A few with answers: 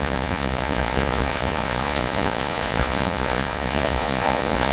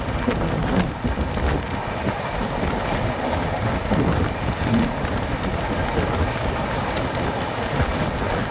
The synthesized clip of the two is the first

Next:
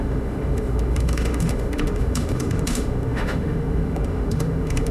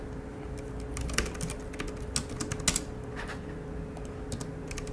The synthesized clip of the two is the first